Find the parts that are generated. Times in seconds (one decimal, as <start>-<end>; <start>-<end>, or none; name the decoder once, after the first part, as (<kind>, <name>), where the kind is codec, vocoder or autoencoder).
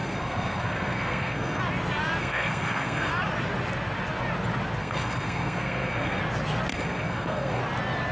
0.0-1.6 (codec, SNAC); 2.2-3.1; 4.8-6.2; 6.7-7.6